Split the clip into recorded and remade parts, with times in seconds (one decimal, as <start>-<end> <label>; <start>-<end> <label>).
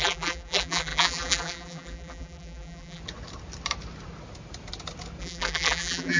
0.0-3.0 remade; 3.0-5.2 recorded; 5.2-6.2 remade